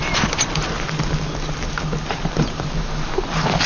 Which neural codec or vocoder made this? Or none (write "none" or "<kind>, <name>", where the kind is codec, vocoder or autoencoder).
none